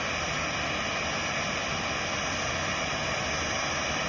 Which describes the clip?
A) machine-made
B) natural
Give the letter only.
B